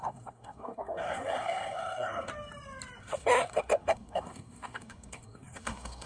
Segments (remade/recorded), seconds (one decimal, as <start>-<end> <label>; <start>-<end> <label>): 0.0-2.3 remade; 2.3-3.0 recorded; 3.0-6.1 remade